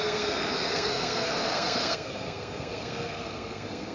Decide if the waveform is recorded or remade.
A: remade